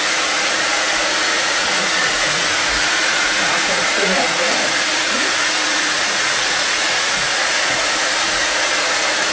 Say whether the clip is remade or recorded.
remade